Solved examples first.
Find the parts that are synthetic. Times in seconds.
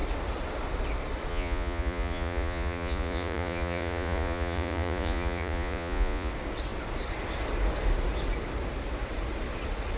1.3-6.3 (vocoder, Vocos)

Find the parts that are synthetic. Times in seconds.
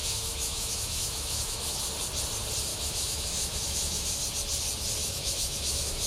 0.0-1.8 (autoencoder, DAC-VAE); 2.7-4.2; 5.0-6.1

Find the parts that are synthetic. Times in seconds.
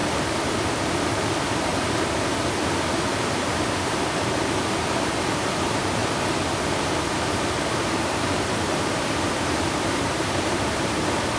0.0-1.7 (vocoder, BigVGAN v2); 3.4-6.0; 6.6-11.4